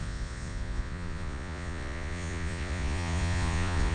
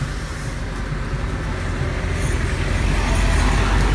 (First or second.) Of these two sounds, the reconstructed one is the first